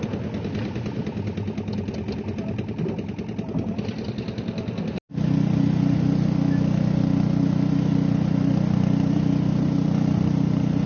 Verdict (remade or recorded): recorded